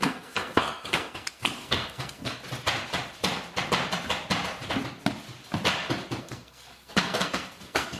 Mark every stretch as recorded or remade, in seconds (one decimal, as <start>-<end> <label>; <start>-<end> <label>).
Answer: 0.0-2.3 remade; 2.3-6.2 recorded; 6.2-8.0 remade